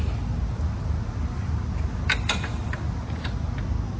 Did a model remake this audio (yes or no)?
no